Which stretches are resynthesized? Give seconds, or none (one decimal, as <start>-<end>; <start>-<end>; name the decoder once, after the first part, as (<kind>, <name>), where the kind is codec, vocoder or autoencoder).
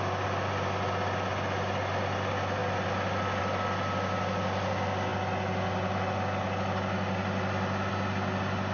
none